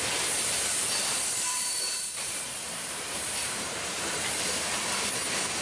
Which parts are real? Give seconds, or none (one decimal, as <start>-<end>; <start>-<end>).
0.0-1.5; 4.0-5.6